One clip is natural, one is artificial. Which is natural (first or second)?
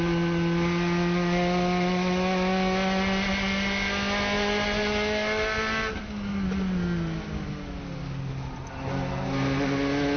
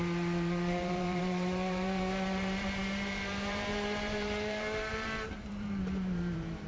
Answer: first